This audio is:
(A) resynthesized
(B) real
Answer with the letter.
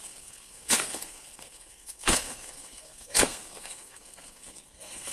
A